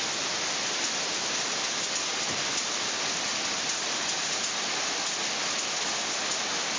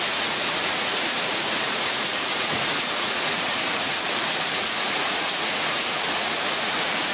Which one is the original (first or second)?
first